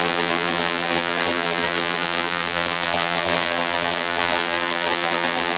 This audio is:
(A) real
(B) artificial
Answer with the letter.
B